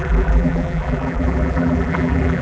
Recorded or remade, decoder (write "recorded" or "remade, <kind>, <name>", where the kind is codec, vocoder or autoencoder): remade, vocoder, BigVGAN v2